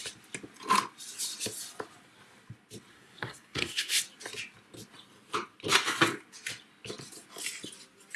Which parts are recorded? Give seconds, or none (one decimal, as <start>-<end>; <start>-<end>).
0.0-2.9; 4.0-8.2